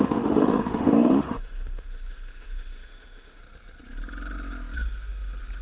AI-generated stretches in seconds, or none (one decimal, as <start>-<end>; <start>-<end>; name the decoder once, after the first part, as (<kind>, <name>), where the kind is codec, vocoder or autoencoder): 0.0-3.4 (autoencoder, DAC-VAE)